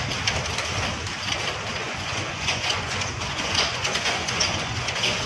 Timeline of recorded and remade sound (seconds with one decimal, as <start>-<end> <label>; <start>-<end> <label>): 0.0-1.7 recorded; 1.7-5.3 remade